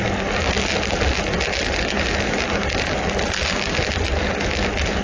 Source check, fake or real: real